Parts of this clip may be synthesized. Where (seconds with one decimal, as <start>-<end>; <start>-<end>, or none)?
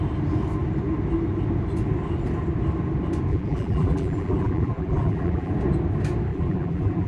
3.3-5.5; 6.3-7.1